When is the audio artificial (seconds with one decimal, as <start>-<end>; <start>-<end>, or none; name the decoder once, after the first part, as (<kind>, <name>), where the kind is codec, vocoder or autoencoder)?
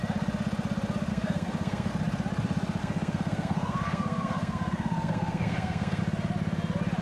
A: 1.1-1.9 (codec, SNAC); 2.8-6.0